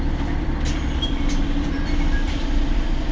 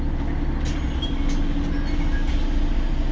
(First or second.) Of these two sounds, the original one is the second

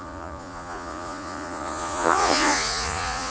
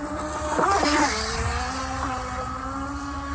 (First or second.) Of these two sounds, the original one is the second